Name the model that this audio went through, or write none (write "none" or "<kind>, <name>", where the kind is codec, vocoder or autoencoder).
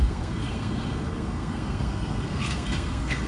codec, SNAC